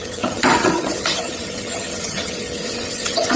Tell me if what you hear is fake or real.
fake